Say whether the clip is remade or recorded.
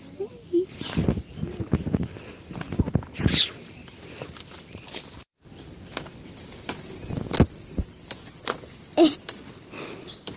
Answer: remade